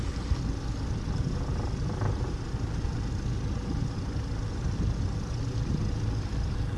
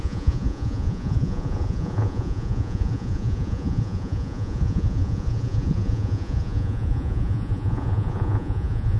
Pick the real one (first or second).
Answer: first